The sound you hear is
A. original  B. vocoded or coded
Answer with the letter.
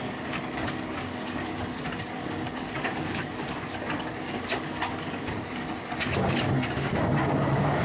B